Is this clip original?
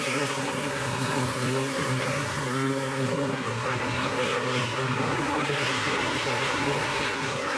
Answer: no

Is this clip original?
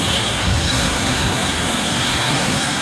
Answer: no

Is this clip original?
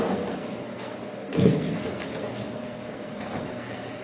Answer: no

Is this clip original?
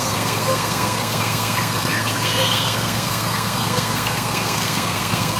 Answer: no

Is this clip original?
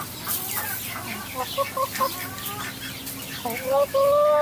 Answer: yes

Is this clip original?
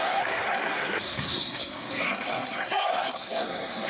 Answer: no